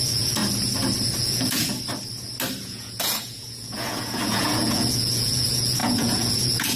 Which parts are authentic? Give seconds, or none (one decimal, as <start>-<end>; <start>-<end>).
0.4-1.2; 1.7-2.6